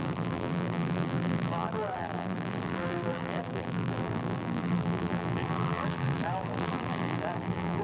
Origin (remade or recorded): remade